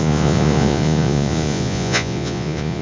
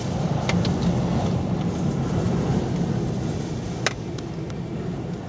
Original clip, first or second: second